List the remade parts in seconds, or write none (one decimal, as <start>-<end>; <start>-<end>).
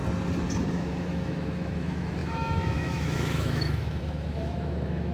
0.7-5.1